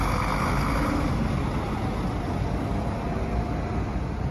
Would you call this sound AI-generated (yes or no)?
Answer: no